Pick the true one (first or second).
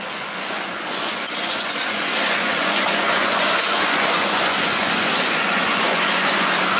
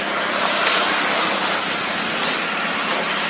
second